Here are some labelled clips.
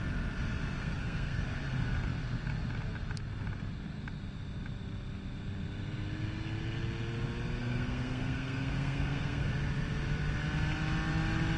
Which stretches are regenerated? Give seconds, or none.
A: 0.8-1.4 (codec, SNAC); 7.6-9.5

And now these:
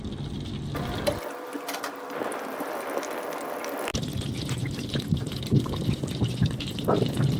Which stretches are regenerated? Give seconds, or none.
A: none

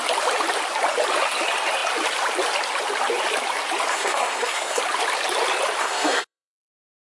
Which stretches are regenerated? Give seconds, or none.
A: 3.9-4.8 (codec, SNAC); 5.8-6.7

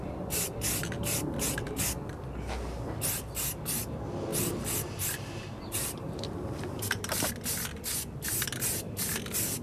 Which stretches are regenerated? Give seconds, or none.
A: 4.3-7.3 (vocoder, BigVGAN v2)

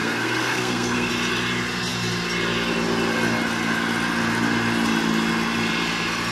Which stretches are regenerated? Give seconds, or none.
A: 0.0-1.1 (codec, SNAC)